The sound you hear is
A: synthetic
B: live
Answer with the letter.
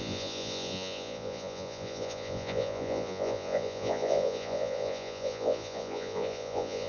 A